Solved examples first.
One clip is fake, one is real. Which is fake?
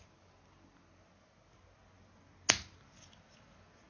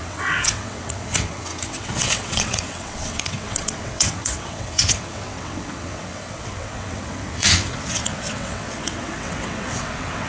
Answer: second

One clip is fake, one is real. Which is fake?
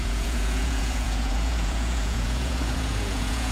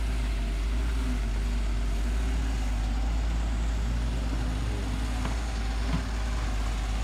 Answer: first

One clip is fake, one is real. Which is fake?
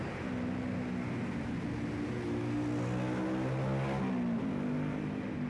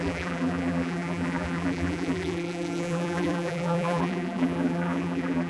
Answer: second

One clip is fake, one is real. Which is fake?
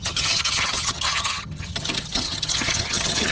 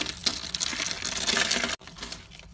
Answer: first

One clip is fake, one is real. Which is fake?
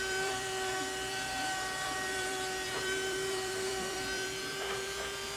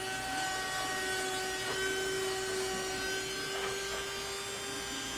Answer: first